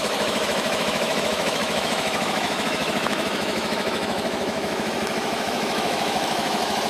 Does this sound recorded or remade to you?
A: remade